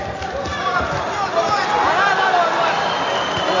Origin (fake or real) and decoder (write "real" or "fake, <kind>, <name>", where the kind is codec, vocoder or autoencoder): real